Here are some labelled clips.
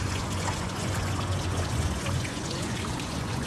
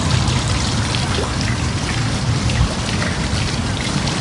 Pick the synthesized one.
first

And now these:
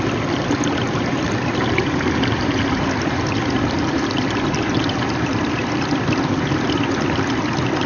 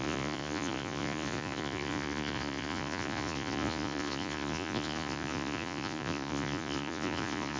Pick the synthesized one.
second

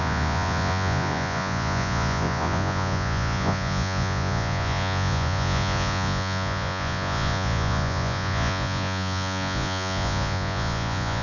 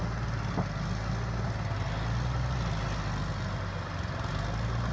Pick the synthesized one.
first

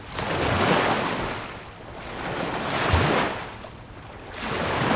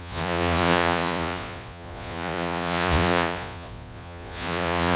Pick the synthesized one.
second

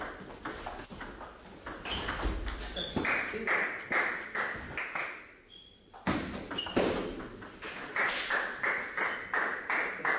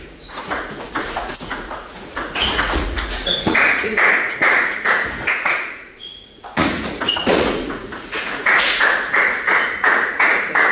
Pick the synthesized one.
second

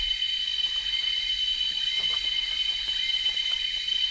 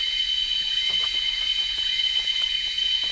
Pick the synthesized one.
second